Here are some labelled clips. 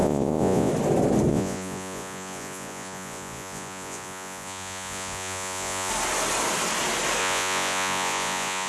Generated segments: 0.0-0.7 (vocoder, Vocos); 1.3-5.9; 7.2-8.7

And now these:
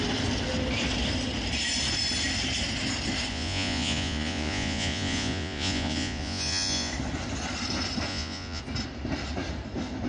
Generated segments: 3.3-6.9 (vocoder, Vocos); 8.1-8.6

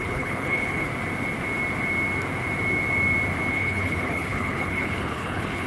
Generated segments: 0.0-0.9 (codec, HILCodec); 3.5-5.7

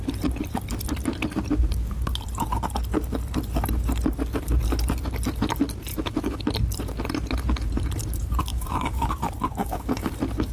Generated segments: 5.9-6.4 (autoencoder, DAC-VAE); 8.5-9.1; 9.6-10.1

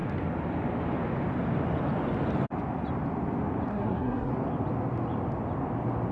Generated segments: 3.7-4.3 (codec, SNAC)

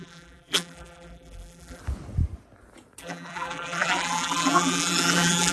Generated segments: 0.0-1.8 (vocoder, BigVGAN v2); 3.0-5.5

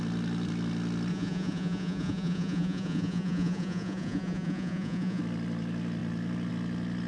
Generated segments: 1.1-5.2 (vocoder, Vocos)